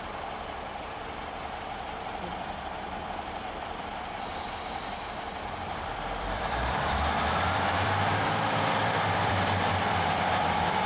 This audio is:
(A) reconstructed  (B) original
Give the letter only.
A